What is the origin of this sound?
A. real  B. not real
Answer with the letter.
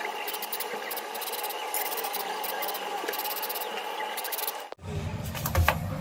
A